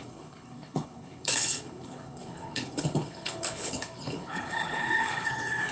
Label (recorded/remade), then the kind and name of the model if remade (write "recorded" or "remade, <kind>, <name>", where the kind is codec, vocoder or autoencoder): remade, codec, HILCodec